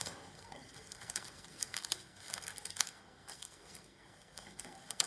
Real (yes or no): no